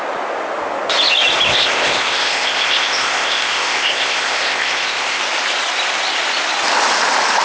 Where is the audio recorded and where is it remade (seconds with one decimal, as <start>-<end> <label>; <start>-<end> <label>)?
0.0-1.5 recorded; 1.5-5.2 remade; 5.2-7.4 recorded